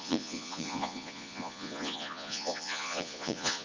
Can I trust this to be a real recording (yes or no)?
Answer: no